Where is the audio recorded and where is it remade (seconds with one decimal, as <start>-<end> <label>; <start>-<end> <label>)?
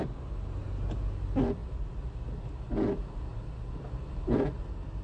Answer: 0.0-5.0 recorded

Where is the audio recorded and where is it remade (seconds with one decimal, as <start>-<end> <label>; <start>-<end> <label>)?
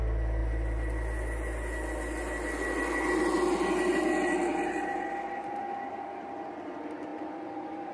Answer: 0.0-4.5 recorded; 4.5-5.6 remade; 5.6-7.1 recorded; 7.1-7.9 remade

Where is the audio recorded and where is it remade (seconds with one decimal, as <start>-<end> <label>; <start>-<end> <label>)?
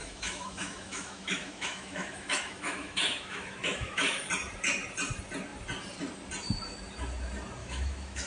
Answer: 0.0-4.3 remade; 4.3-7.6 recorded; 7.6-8.3 remade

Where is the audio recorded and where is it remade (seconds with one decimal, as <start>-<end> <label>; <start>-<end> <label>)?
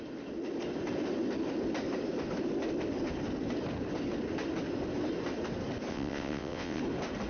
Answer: 0.0-5.9 recorded; 5.9-6.8 remade; 6.8-7.3 recorded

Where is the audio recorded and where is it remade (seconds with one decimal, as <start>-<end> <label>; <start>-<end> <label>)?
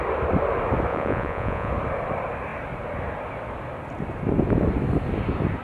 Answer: 0.0-0.9 recorded; 0.9-1.7 remade; 1.7-5.6 recorded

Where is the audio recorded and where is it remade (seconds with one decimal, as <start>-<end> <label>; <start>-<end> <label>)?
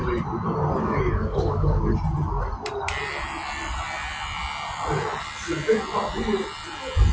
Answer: 0.0-0.8 recorded; 0.8-1.8 remade; 1.8-7.1 recorded